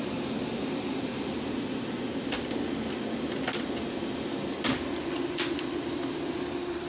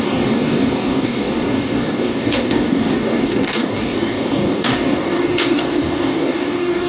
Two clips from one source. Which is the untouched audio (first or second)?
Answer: first